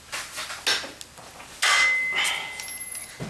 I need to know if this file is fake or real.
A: real